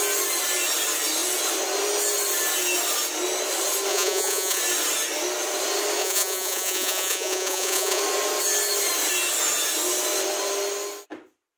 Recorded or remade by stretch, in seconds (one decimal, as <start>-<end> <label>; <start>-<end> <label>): 0.0-3.9 recorded; 3.9-4.6 remade; 4.6-6.0 recorded; 6.0-8.0 remade; 8.0-11.6 recorded